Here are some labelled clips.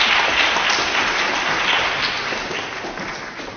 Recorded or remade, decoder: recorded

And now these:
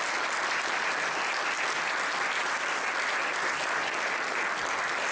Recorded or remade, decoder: recorded